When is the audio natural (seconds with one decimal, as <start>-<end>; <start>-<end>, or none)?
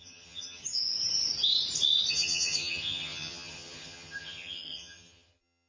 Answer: 0.6-2.1